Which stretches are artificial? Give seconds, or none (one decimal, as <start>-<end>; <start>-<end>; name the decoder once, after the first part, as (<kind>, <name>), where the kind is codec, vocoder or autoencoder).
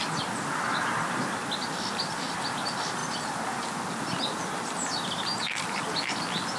none